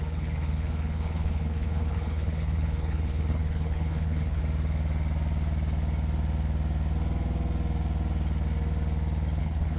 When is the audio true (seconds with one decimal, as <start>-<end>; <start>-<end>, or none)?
4.4-9.4